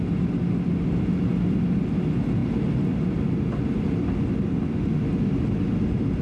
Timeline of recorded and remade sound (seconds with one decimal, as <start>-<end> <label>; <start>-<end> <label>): 0.0-6.2 recorded